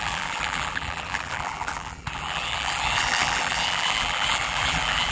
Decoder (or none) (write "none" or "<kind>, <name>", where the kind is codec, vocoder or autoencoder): vocoder, BigVGAN v2